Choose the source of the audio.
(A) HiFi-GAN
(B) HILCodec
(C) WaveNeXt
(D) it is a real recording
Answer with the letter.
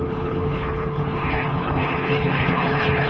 B